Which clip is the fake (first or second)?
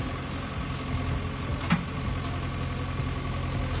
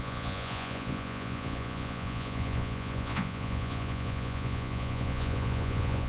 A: second